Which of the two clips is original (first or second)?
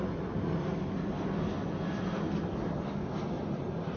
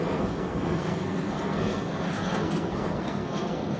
first